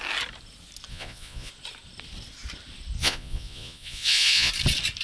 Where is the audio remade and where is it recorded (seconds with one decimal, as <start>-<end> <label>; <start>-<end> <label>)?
0.0-0.9 recorded; 0.9-1.5 remade; 1.5-3.0 recorded; 3.0-4.5 remade; 4.5-5.0 recorded